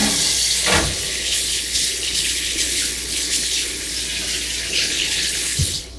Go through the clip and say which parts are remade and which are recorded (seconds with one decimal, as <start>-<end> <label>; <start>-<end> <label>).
0.0-0.8 recorded; 0.8-3.9 remade; 3.9-4.7 recorded; 4.7-6.0 remade